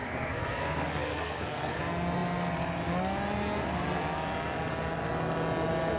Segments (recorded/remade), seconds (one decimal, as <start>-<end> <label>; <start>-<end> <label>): 0.0-1.8 remade; 1.8-6.0 recorded